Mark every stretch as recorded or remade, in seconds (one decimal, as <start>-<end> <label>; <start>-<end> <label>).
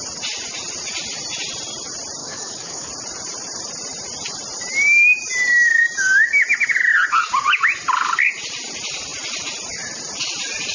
0.0-2.2 recorded; 2.2-2.9 remade; 2.9-10.7 recorded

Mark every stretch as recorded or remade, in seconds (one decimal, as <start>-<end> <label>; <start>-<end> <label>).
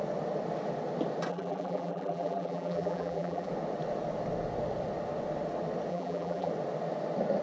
0.0-1.3 recorded; 1.3-3.5 remade; 3.5-5.9 recorded; 5.9-6.5 remade; 6.5-7.4 recorded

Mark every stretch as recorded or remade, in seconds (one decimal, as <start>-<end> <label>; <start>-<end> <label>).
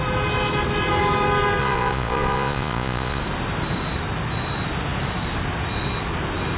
0.0-1.6 recorded; 1.6-3.2 remade; 3.2-6.6 recorded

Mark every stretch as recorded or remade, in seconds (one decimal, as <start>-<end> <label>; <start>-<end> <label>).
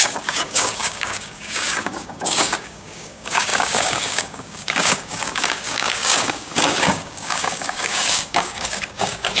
0.0-9.4 remade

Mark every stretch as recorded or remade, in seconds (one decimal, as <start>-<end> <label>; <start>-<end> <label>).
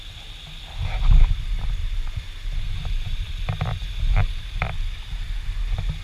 0.0-1.8 recorded; 1.8-3.4 remade; 3.4-3.8 recorded; 3.8-4.6 remade; 4.6-6.0 recorded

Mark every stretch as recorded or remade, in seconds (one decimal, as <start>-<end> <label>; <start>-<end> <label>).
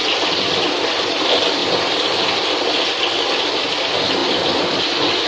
0.0-5.3 recorded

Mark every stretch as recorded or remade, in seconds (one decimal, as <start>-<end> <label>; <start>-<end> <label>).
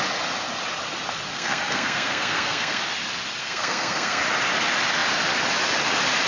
0.0-1.3 recorded; 1.3-2.8 remade; 2.8-3.4 recorded; 3.4-4.2 remade; 4.2-6.3 recorded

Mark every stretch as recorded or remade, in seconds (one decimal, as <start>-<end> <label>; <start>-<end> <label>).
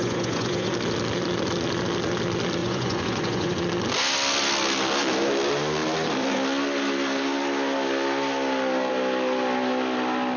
0.0-0.7 remade; 0.7-2.6 recorded; 2.6-3.6 remade; 3.6-10.4 recorded